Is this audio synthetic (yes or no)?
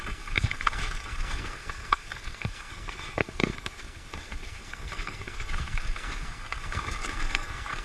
yes